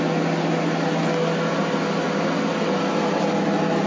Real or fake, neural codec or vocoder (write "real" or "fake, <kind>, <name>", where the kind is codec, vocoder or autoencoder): real